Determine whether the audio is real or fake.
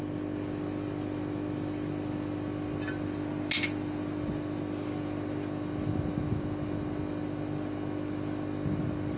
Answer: real